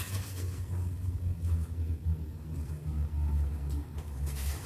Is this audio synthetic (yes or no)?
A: yes